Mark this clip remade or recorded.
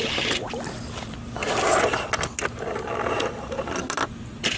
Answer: recorded